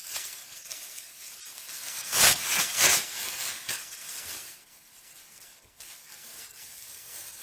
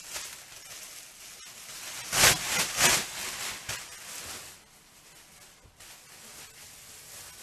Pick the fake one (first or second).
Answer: first